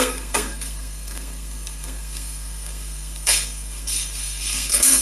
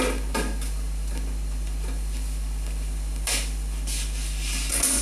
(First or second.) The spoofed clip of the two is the first